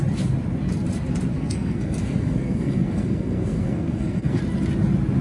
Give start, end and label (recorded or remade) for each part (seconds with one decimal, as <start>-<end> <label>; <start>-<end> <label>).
0.0-1.3 recorded; 1.3-4.4 remade; 4.4-5.2 recorded